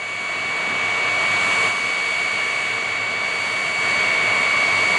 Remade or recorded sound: recorded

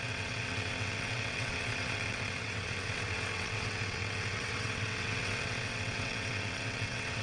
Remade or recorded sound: remade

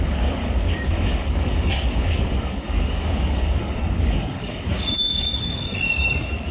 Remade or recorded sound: remade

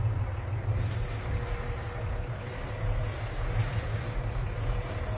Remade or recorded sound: recorded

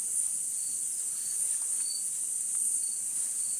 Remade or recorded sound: recorded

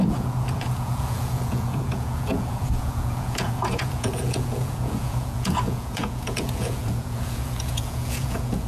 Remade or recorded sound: remade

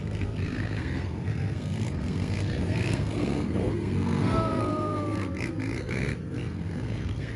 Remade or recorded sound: remade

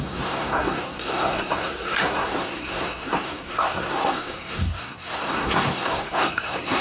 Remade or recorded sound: remade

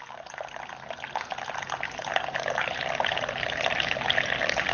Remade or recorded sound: recorded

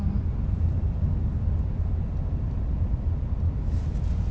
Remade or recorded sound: recorded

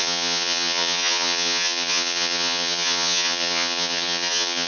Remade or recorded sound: remade